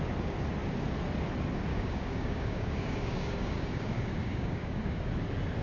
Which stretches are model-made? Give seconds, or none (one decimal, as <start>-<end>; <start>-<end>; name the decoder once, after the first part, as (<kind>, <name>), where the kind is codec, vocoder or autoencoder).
1.7-5.1 (codec, DAC)